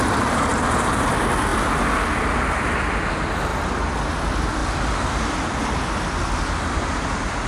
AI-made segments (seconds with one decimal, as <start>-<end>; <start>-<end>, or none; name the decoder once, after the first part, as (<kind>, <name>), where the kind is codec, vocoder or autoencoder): 0.5-1.1 (vocoder, BigVGAN v2)